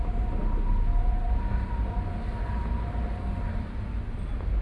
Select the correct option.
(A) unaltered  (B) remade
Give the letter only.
A